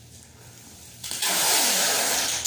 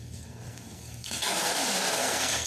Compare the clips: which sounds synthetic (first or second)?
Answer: second